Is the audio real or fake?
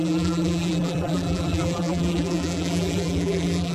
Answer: fake